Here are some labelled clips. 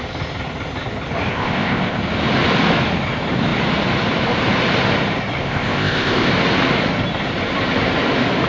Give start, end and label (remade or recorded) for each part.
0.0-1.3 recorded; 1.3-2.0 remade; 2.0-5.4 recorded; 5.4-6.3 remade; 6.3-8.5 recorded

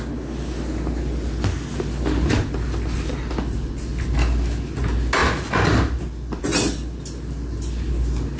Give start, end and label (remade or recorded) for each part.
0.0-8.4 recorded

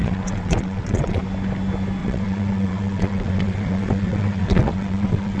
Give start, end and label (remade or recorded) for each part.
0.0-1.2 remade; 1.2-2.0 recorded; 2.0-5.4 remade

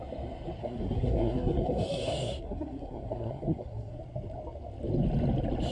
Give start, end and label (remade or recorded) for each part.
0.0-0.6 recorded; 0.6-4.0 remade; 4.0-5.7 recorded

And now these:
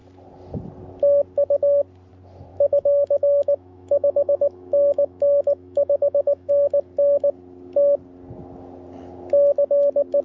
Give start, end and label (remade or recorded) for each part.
0.0-2.5 recorded; 2.5-6.5 remade; 6.5-10.2 recorded